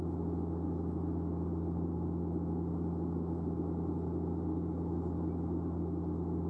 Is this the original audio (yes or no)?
yes